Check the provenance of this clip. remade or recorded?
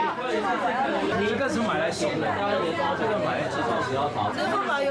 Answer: remade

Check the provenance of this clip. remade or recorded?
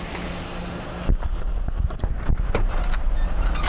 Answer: recorded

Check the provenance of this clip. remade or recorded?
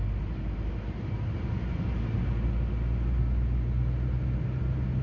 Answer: recorded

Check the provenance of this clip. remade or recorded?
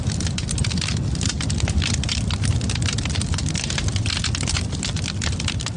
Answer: remade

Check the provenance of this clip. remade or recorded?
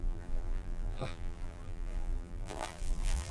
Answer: remade